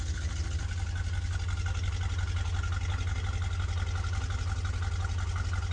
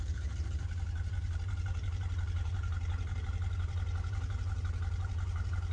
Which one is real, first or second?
first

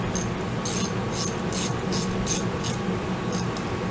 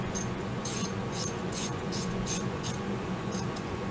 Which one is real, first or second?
first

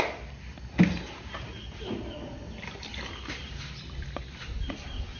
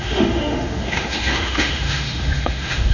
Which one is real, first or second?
first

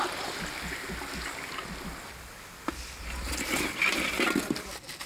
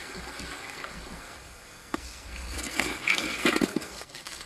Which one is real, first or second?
first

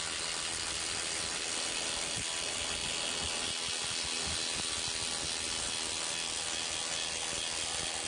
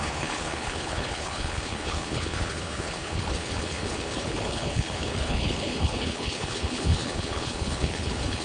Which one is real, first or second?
first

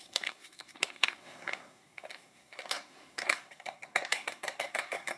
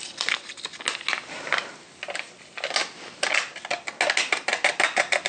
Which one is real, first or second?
second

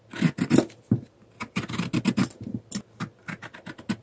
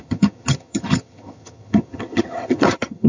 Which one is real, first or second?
first